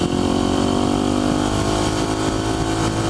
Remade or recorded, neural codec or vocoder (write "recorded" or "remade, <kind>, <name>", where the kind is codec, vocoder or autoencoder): recorded